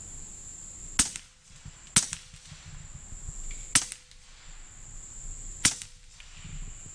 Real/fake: real